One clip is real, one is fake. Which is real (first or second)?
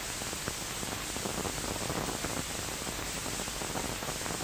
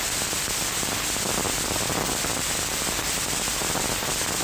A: first